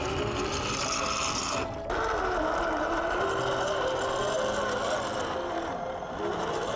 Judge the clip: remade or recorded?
recorded